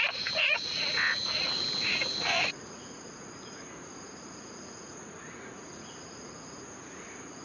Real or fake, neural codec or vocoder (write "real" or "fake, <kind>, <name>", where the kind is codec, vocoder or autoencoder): fake, vocoder, Vocos